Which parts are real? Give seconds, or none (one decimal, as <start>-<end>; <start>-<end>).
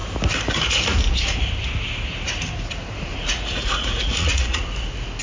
0.0-3.1; 4.6-5.2